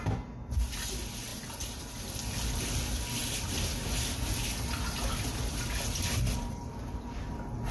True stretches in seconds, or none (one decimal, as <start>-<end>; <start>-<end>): 0.0-7.7